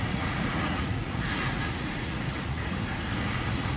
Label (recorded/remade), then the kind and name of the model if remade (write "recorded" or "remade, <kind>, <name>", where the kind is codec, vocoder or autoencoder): remade, vocoder, Vocos